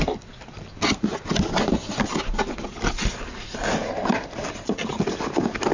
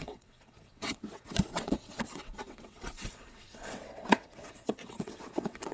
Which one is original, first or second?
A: first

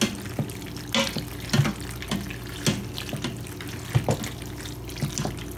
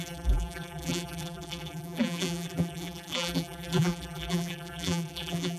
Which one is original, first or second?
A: first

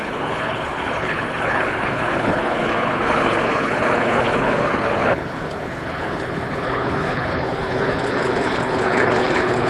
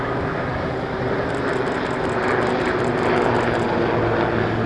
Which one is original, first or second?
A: second